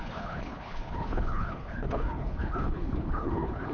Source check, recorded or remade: remade